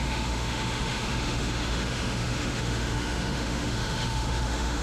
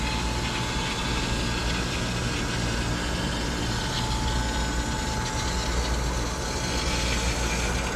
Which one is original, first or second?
second